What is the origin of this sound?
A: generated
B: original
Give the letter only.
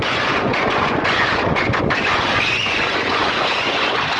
A